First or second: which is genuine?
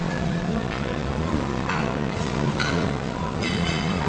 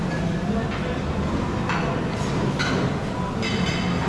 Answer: second